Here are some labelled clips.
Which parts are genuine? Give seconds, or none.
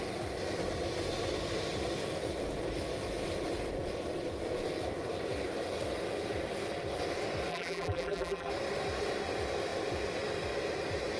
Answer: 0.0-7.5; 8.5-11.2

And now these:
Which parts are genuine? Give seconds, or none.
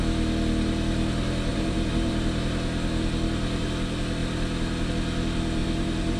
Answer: 0.0-1.5; 2.1-5.6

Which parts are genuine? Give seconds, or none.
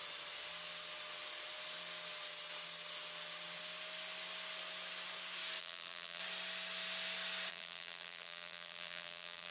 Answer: 0.0-5.6; 6.2-7.5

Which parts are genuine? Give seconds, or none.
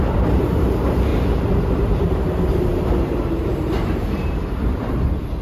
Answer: 1.1-1.7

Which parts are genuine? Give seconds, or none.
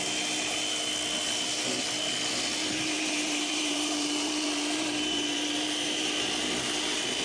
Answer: 0.0-2.6; 6.1-7.2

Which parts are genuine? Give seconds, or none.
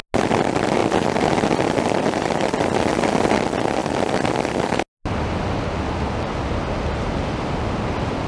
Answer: 0.0-8.3